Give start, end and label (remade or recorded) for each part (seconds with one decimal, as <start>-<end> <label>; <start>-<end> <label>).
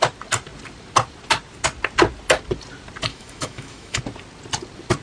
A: 0.0-3.1 recorded; 3.1-4.0 remade; 4.0-5.0 recorded